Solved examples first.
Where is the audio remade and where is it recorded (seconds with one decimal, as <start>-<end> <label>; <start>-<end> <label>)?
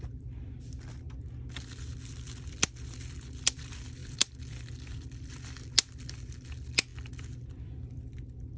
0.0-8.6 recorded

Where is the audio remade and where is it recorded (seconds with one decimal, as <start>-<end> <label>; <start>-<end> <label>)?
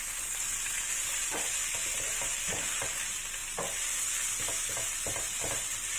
0.0-6.0 recorded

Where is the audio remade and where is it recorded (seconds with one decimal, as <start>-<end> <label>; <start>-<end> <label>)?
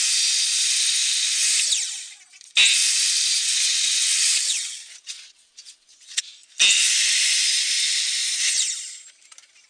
0.0-3.4 recorded; 3.4-6.2 remade; 6.2-9.7 recorded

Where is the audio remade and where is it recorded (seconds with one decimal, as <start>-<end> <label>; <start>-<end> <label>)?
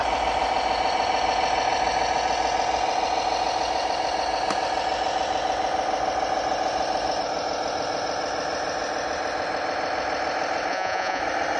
0.0-10.7 recorded; 10.7-11.2 remade; 11.2-11.6 recorded